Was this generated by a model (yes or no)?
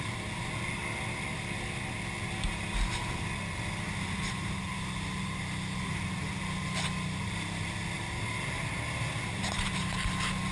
no